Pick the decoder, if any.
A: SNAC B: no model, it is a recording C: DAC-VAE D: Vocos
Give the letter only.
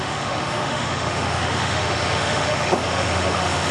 C